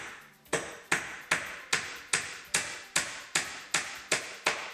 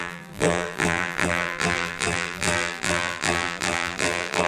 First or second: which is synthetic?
second